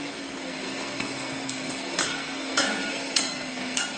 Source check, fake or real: fake